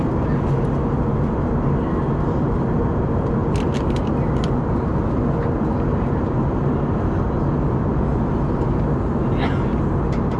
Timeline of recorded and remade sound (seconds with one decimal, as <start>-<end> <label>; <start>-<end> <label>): 0.0-10.4 recorded